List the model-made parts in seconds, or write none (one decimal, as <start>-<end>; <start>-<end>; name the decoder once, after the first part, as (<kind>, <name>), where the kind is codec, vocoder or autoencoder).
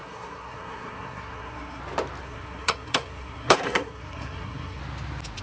0.0-1.8 (codec, SNAC); 2.2-4.8